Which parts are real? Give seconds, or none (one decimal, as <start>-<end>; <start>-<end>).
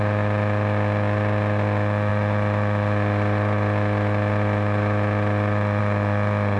0.0-6.6